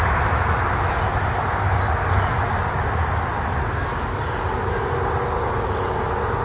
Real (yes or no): yes